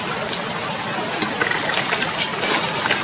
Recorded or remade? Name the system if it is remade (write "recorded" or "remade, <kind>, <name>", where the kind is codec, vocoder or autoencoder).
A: recorded